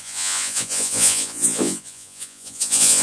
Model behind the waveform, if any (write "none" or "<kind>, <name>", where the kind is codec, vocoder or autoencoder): vocoder, Vocos